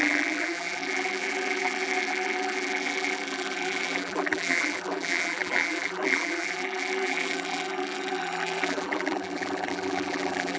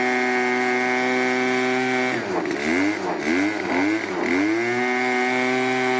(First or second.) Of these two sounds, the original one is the second